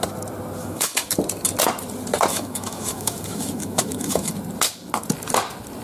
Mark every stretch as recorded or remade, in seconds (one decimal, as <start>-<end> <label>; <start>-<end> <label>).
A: 0.0-0.6 recorded; 0.6-1.1 remade; 1.1-2.3 recorded; 2.3-4.3 remade; 4.3-5.8 recorded